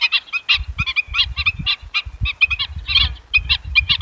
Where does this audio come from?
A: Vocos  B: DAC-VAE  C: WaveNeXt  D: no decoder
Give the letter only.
D